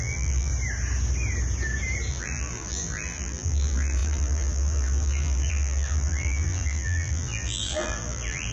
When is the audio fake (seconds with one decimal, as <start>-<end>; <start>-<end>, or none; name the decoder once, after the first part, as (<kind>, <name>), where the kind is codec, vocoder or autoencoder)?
0.0-0.5 (vocoder, BigVGAN v2); 2.1-8.5